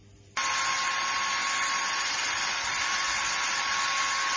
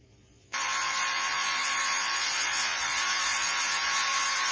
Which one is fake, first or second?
second